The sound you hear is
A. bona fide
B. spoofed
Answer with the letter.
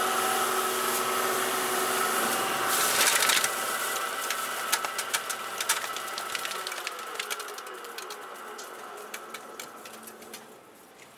A